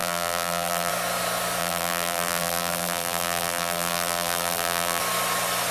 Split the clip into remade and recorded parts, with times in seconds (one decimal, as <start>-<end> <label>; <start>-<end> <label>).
0.0-0.9 remade; 0.9-1.6 recorded; 1.6-5.0 remade; 5.0-5.7 recorded

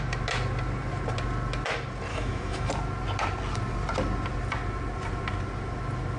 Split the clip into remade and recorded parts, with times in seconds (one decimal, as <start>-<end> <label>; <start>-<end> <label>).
0.0-2.1 recorded; 2.1-2.7 remade; 2.7-6.2 recorded